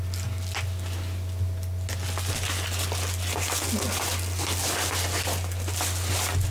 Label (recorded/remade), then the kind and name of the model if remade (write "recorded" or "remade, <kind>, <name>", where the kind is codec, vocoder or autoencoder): recorded